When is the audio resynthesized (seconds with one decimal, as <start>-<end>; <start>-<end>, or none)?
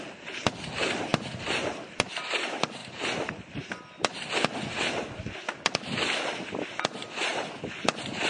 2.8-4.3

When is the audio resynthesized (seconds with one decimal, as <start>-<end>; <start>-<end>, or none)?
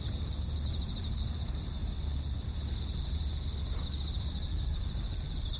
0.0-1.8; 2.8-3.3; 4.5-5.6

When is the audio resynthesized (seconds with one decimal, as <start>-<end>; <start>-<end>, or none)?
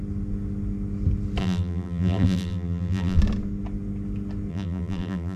1.4-3.2; 4.5-5.4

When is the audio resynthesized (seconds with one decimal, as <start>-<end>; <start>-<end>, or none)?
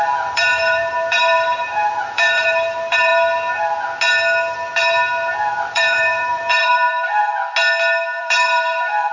0.0-3.1; 5.6-7.2; 8.2-9.1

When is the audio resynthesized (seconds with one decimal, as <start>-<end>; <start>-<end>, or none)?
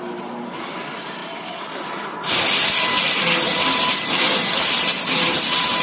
1.2-4.7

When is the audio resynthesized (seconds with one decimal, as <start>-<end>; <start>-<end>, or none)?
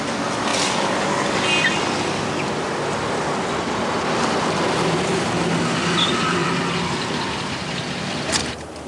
0.5-2.1; 6.4-8.5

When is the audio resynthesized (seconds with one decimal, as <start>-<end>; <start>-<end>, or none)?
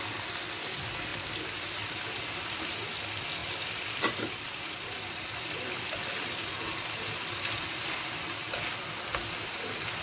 1.1-1.9; 3.4-8.1